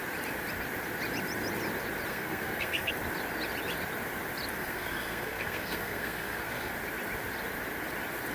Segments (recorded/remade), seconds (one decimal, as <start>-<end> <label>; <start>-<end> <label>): 0.0-2.1 recorded; 2.1-2.9 remade; 2.9-4.6 recorded; 4.6-6.7 remade; 6.7-8.3 recorded